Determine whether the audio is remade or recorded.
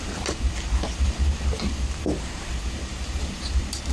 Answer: recorded